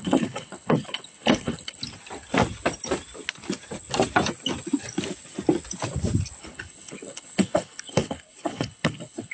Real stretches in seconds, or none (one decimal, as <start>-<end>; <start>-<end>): 1.8-6.4